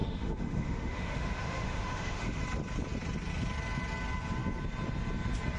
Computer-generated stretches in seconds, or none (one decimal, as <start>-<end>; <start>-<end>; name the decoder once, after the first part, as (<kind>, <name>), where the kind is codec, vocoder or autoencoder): 0.0-2.4 (autoencoder, DAC-VAE)